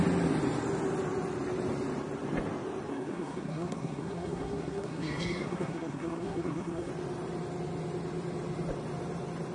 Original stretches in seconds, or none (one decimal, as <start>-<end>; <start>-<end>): 0.0-2.9; 6.9-9.5